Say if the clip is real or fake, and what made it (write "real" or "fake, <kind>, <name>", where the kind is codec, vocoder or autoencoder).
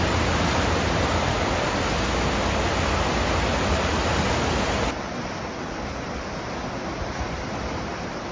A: real